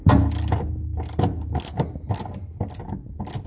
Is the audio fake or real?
real